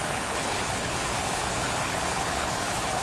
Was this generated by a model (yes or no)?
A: yes